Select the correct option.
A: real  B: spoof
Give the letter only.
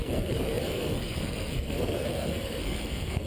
B